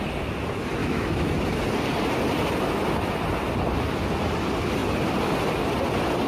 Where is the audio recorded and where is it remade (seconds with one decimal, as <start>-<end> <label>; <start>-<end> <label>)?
0.0-0.8 recorded; 0.8-1.3 remade; 1.3-6.3 recorded